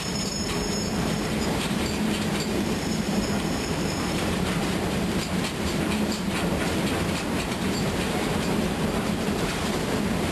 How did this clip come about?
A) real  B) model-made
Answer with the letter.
B